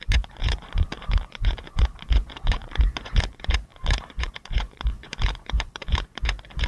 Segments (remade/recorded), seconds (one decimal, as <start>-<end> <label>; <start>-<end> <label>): 0.0-6.7 remade